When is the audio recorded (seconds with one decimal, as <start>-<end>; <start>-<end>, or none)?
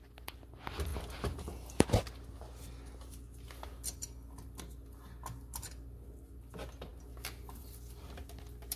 0.0-8.8